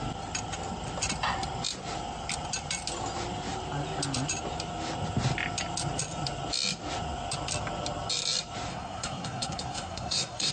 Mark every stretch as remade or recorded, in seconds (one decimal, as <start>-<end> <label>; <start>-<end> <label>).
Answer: 0.0-8.7 recorded; 8.7-10.5 remade